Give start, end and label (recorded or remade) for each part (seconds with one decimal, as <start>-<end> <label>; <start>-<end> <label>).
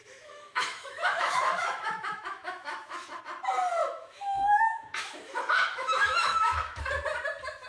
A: 0.0-3.2 remade; 3.2-3.8 recorded; 3.8-6.8 remade; 6.8-7.7 recorded